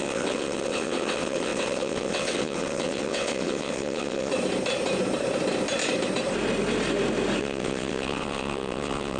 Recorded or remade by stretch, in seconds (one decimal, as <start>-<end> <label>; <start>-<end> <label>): 0.0-4.3 remade; 4.3-7.4 recorded; 7.4-9.2 remade